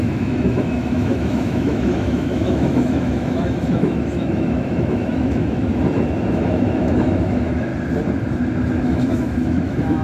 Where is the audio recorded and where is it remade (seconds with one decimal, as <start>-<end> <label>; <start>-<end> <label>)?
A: 0.0-5.7 remade; 5.7-6.3 recorded; 6.3-7.7 remade; 7.7-8.8 recorded; 8.8-10.0 remade